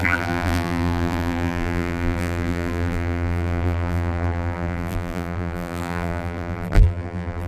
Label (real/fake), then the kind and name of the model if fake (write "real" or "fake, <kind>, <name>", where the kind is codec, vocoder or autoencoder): fake, vocoder, BigVGAN v2